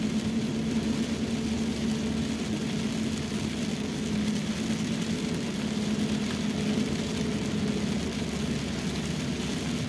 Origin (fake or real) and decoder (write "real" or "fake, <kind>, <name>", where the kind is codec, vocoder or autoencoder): real